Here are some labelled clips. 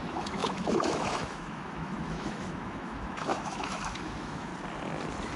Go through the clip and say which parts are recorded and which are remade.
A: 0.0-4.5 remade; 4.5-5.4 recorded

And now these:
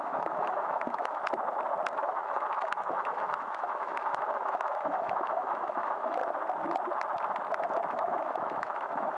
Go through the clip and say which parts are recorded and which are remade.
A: 0.0-1.2 remade; 1.2-1.9 recorded; 1.9-6.2 remade; 6.2-7.9 recorded; 7.9-9.2 remade